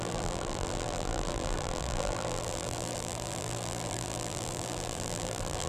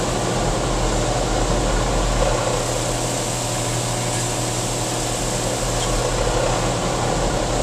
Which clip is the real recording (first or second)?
second